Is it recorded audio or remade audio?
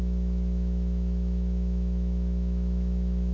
remade